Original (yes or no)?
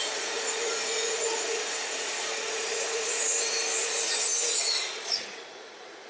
no